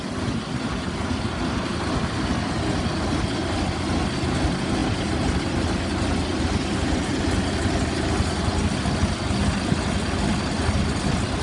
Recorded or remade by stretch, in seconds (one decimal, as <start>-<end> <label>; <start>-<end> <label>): 0.0-11.4 recorded